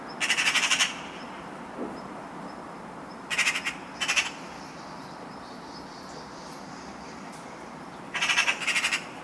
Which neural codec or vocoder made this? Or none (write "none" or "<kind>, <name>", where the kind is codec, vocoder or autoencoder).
none